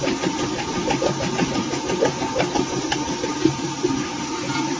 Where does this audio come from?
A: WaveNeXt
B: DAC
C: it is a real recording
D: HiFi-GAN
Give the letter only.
C